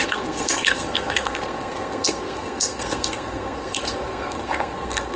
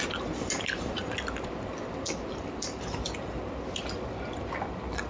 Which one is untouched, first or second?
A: second